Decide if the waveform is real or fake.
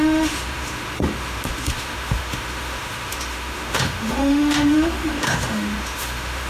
fake